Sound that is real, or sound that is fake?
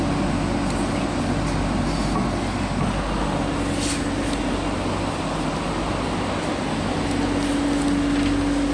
real